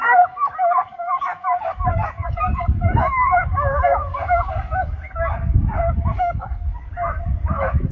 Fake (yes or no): yes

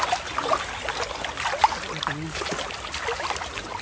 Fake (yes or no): no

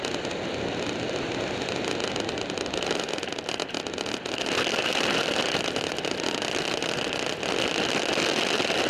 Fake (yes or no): no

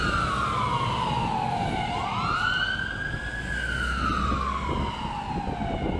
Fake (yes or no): no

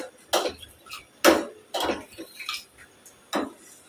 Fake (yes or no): no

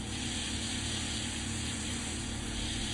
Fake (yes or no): yes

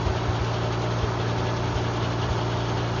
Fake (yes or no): no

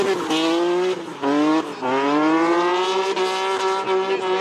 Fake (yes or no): no